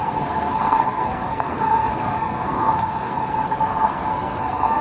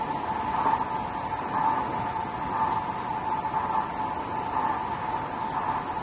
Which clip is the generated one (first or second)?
first